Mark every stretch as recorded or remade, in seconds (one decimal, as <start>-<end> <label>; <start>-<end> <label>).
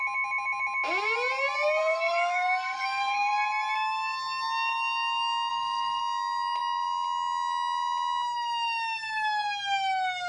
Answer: 0.0-1.8 recorded; 1.8-3.3 remade; 3.3-5.5 recorded; 5.5-6.0 remade; 6.0-10.3 recorded